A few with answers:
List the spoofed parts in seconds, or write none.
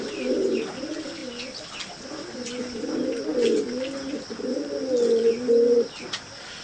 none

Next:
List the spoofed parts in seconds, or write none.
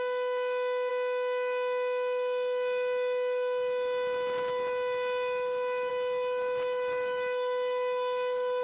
none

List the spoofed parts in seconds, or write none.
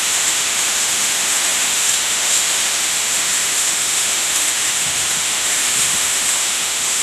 0.0-7.0 (autoencoder, DAC-VAE)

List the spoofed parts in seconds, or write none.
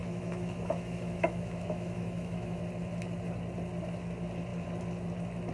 0.0-2.6 (autoencoder, DAC-VAE)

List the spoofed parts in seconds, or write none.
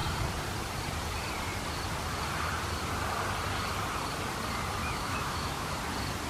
4.8-5.7 (autoencoder, DAC-VAE)